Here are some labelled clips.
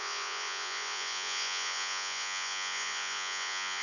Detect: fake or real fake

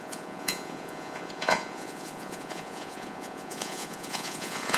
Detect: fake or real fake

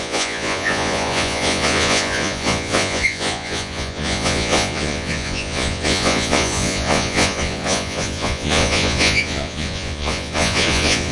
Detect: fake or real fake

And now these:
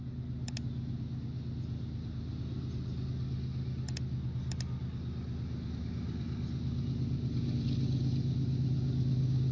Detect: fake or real real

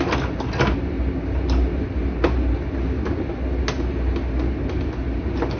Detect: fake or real real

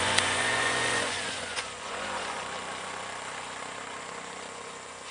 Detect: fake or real fake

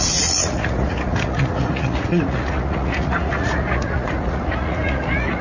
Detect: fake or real fake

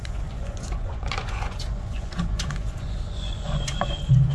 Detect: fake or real fake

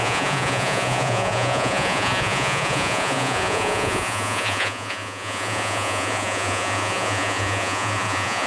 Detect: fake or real fake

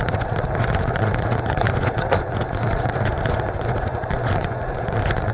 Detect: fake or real fake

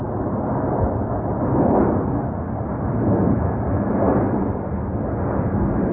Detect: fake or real real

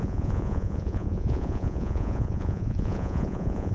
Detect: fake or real fake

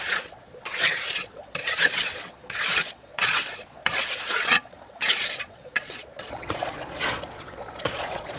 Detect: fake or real fake